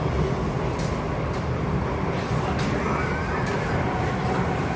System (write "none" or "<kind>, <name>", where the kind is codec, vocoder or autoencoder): none